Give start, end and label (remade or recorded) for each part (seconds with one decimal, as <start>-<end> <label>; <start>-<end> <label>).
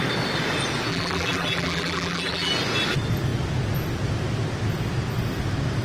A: 0.0-0.9 recorded; 0.9-2.5 remade; 2.5-5.8 recorded